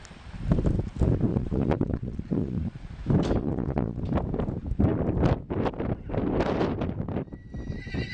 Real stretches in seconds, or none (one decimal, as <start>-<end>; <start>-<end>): 0.0-1.3; 2.9-3.4; 4.0-8.1